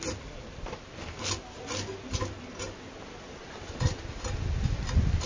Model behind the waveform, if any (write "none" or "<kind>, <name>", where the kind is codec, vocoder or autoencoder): none